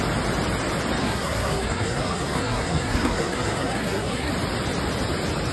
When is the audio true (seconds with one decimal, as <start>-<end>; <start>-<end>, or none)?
0.0-1.0; 4.3-5.5